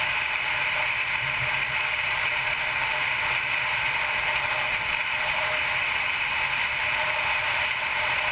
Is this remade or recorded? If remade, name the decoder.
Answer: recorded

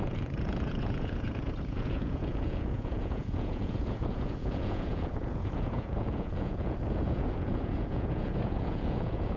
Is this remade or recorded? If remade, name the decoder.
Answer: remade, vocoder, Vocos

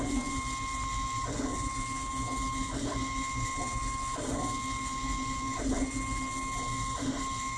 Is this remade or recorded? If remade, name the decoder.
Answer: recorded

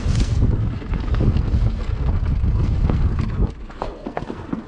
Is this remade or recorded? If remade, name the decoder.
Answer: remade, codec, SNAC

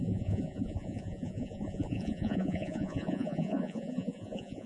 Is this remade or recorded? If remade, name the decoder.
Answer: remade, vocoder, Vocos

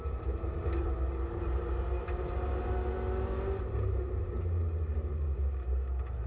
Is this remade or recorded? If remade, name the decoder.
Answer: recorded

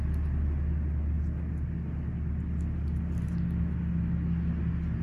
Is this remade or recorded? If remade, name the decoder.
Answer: recorded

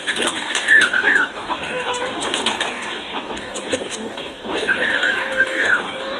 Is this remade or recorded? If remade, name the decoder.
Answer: remade, codec, DAC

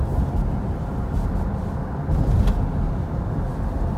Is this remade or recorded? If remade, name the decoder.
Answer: recorded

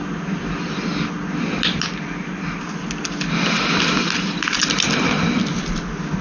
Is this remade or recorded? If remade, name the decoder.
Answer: recorded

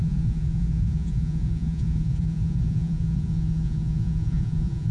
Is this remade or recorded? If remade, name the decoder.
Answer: remade, vocoder, Vocos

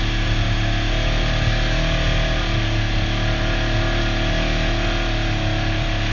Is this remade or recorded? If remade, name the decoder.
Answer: recorded